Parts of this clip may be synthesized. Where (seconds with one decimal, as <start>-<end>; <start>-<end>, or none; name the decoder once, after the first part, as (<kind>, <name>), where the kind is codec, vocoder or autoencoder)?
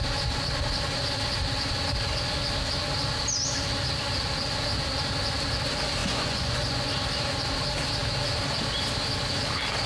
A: 6.0-6.9 (vocoder, Vocos)